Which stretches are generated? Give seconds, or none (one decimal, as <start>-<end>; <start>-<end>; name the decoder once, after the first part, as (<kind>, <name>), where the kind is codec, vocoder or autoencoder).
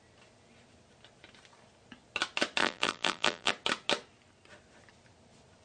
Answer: 2.6-3.5 (vocoder, BigVGAN v2)